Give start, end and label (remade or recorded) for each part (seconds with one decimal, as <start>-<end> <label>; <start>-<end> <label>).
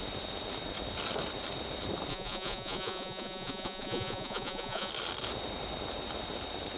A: 0.0-2.1 recorded; 2.1-4.9 remade; 4.9-6.8 recorded